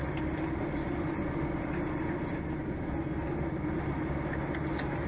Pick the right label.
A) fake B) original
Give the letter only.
B